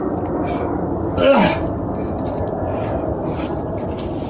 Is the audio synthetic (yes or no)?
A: yes